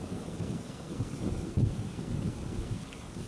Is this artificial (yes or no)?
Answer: yes